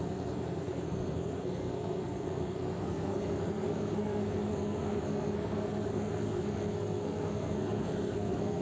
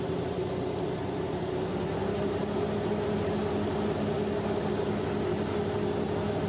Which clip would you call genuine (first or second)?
second